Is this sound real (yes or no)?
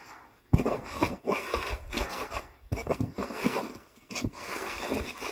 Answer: no